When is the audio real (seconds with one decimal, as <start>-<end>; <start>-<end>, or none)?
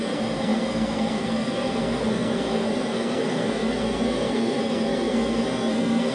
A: none